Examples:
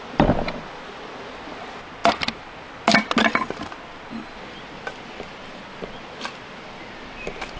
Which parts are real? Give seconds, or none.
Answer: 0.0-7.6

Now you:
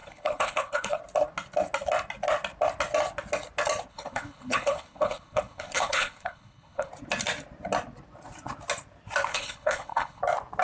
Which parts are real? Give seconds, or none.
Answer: 1.0-3.9; 6.9-9.3; 10.2-10.6

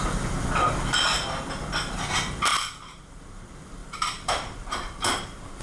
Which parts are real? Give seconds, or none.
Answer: 0.0-2.5; 3.2-3.8

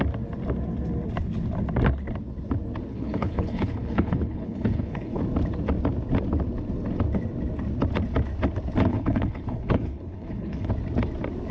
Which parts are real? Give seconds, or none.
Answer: 0.0-2.9; 5.2-8.9; 10.7-11.5

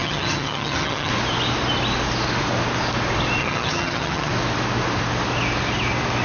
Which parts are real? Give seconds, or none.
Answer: 1.1-3.4; 4.3-6.2

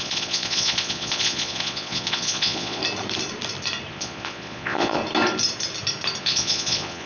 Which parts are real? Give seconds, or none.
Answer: 2.8-3.9; 5.0-6.2